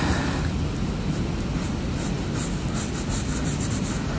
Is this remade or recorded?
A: recorded